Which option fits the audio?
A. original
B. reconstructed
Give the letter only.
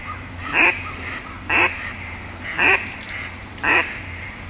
B